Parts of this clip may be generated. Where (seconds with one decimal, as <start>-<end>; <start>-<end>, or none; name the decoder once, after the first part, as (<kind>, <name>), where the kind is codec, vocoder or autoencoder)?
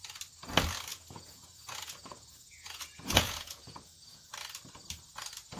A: 0.9-4.3 (vocoder, Vocos)